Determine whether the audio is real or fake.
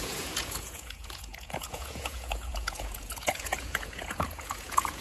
fake